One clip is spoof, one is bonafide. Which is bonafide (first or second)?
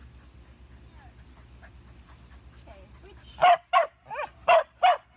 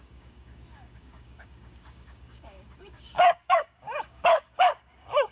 first